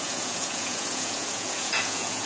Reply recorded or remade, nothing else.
remade